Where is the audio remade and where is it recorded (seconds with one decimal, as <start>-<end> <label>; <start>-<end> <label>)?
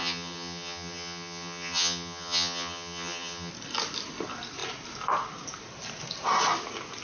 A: 0.0-3.5 remade; 3.5-7.0 recorded